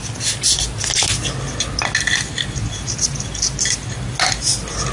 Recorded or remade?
recorded